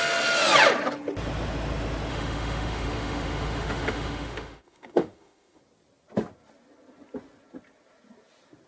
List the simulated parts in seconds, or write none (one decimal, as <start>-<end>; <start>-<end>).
2.1-5.6